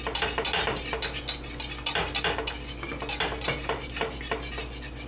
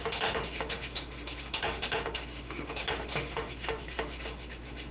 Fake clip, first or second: second